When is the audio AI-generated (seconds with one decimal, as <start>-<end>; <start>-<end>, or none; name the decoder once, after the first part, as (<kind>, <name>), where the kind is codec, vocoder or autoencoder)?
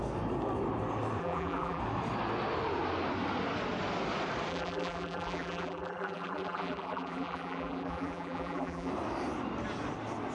1.2-1.8 (vocoder, BigVGAN v2); 4.5-8.9